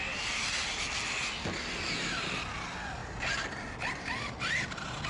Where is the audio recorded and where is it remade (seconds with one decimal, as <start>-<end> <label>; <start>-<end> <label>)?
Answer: 0.0-5.1 recorded